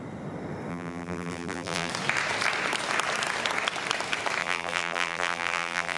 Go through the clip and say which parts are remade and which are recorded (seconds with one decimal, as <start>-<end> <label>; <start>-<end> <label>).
0.0-0.7 recorded; 0.7-1.9 remade; 1.9-4.4 recorded; 4.4-6.0 remade